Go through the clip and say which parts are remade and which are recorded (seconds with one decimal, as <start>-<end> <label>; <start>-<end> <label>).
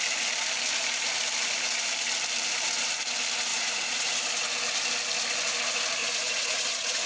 0.0-3.5 recorded; 3.5-4.0 remade; 4.0-6.0 recorded; 6.0-7.1 remade